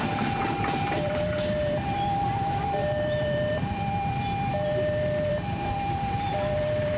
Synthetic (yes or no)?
yes